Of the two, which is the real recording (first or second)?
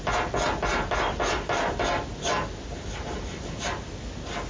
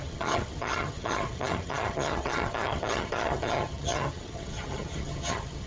first